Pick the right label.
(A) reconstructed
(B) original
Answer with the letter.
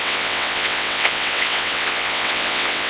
A